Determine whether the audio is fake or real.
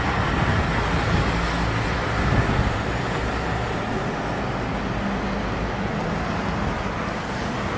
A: real